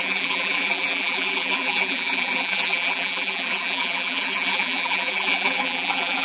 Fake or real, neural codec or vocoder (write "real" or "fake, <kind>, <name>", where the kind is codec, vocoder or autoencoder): fake, vocoder, BigVGAN v2